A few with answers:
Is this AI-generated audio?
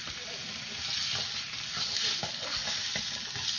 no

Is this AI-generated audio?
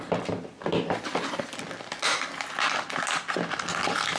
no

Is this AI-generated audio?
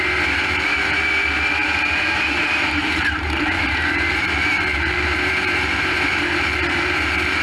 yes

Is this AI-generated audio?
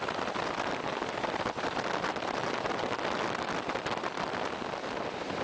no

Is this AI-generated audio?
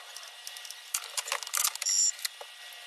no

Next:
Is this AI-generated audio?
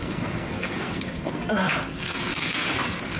yes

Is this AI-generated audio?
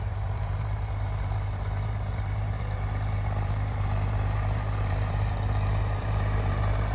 yes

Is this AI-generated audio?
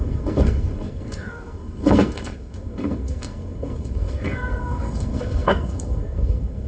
yes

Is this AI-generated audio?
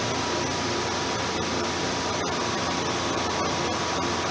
no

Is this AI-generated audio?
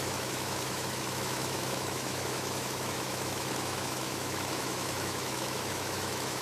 yes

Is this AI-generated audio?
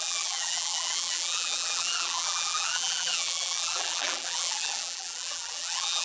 yes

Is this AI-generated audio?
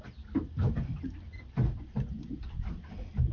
yes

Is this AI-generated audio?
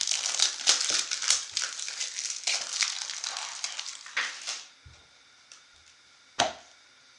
no